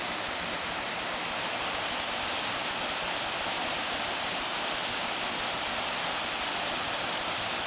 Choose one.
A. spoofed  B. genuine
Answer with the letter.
B